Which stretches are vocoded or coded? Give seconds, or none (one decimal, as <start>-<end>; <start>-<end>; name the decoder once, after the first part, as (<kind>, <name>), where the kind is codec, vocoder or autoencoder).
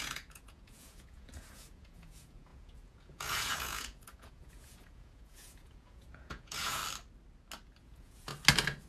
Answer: 0.0-6.8 (vocoder, Vocos); 7.8-8.3